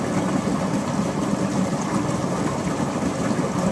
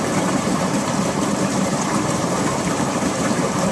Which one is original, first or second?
first